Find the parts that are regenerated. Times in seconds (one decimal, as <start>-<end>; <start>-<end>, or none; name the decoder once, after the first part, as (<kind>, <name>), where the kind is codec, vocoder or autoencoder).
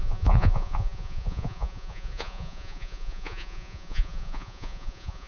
0.0-5.3 (vocoder, Vocos)